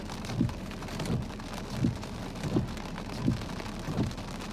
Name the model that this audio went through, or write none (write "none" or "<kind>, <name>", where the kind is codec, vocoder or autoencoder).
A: none